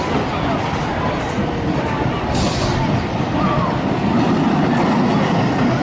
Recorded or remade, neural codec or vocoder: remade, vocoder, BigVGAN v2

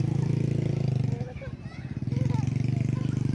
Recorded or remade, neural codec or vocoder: recorded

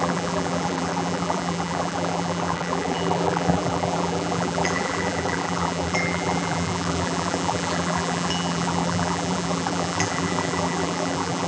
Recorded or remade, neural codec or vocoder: remade, vocoder, BigVGAN v2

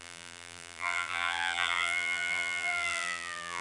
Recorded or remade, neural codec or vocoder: remade, vocoder, BigVGAN v2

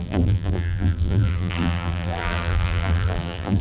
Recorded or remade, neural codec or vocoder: remade, vocoder, BigVGAN v2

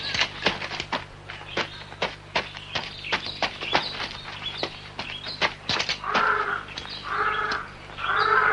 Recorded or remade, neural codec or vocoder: remade, vocoder, BigVGAN v2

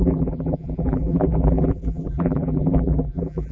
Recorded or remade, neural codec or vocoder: remade, vocoder, BigVGAN v2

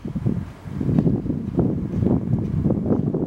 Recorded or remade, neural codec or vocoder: recorded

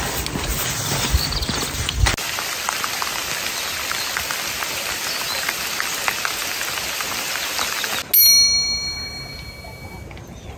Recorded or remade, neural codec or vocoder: recorded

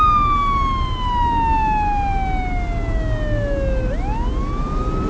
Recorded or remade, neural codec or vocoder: recorded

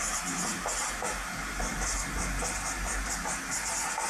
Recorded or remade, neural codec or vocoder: recorded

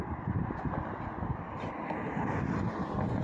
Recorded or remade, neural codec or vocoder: recorded